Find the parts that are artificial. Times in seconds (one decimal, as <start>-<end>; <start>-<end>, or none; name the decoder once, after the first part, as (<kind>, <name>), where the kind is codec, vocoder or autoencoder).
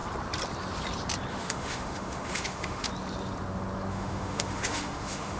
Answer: 1.3-2.9 (autoencoder, DAC-VAE); 3.9-5.4